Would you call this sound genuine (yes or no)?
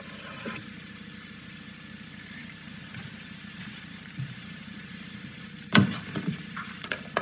no